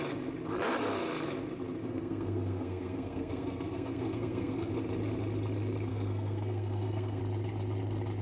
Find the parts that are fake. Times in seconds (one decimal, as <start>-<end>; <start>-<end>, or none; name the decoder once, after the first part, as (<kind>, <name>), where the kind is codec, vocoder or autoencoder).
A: 1.8-4.7 (codec, SNAC); 5.9-7.2